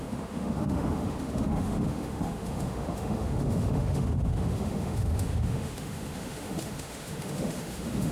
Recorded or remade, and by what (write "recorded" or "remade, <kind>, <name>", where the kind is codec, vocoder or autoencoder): remade, autoencoder, DAC-VAE